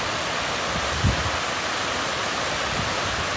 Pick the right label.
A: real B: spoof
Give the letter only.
A